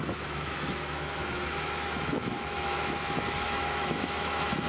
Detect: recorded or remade remade